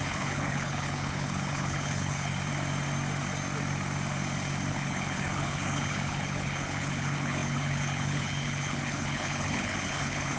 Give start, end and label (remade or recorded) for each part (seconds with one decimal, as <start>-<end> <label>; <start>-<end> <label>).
0.0-2.3 remade; 2.3-4.7 recorded; 4.7-10.4 remade